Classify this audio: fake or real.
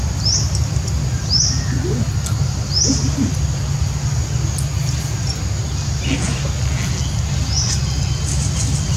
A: real